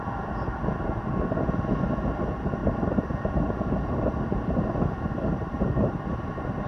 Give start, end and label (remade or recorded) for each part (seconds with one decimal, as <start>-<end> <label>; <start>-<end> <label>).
0.0-2.6 recorded; 2.6-5.9 remade; 5.9-6.7 recorded